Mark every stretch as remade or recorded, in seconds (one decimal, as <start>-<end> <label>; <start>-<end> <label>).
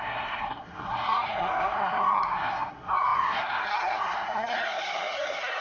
0.0-5.6 remade